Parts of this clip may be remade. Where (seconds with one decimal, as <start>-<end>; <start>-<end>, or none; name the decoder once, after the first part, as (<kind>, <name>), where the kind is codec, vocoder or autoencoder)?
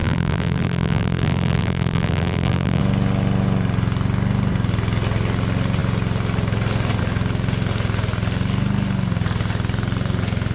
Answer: 0.0-2.8 (vocoder, BigVGAN v2)